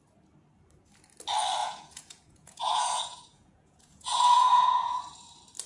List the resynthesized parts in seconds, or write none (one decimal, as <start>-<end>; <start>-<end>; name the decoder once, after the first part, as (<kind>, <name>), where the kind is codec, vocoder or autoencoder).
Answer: 1.6-5.0 (vocoder, Vocos)

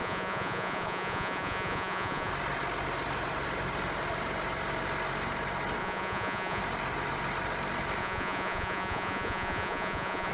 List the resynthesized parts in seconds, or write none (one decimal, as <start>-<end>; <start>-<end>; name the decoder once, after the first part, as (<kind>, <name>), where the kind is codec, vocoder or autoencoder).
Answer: 0.0-2.3 (vocoder, Vocos); 5.8-6.6; 8.0-10.3

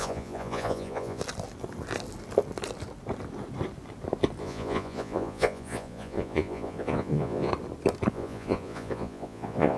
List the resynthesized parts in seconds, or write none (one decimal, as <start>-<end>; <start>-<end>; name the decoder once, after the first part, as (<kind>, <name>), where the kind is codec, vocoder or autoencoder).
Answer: 0.0-1.2 (vocoder, Vocos); 4.4-7.5; 8.1-9.8

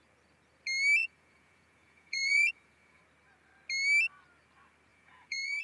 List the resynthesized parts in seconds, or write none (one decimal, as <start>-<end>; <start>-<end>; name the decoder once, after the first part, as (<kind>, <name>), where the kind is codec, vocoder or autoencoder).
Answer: 1.0-3.0 (vocoder, Vocos); 4.9-5.6

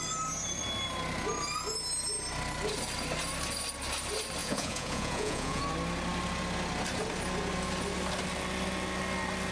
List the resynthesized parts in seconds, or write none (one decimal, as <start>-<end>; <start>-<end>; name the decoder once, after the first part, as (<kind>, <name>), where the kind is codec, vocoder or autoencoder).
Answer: 4.4-5.6 (vocoder, Vocos)

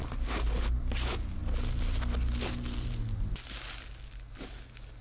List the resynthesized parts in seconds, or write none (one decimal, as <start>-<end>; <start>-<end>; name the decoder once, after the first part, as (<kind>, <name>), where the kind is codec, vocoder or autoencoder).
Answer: none

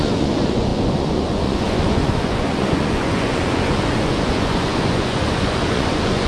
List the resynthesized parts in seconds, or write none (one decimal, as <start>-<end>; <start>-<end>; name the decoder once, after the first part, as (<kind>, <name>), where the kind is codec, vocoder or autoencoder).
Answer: 0.0-6.3 (vocoder, Vocos)